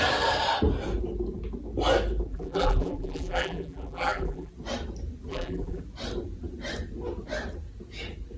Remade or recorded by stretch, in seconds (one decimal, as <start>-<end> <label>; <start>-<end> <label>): 0.0-2.3 recorded; 2.3-4.5 remade; 4.5-5.3 recorded; 5.3-5.8 remade; 5.8-8.4 recorded